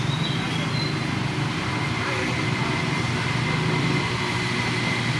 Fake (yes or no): no